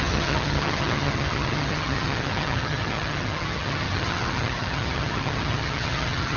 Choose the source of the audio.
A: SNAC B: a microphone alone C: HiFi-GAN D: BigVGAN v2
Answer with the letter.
C